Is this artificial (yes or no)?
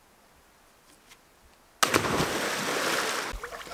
no